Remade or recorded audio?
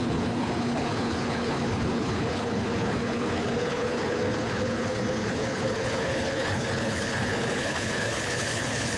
remade